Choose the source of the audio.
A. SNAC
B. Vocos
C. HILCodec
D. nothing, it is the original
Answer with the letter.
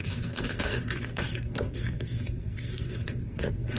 A